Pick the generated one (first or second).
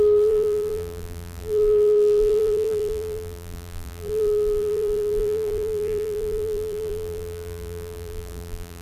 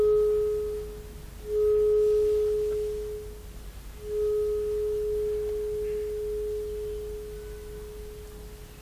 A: first